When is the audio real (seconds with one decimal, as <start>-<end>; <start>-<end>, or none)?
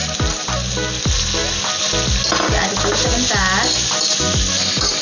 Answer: 0.0-5.0